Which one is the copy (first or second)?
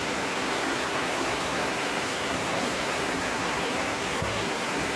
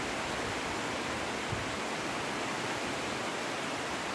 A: first